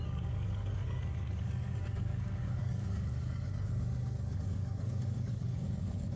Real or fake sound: fake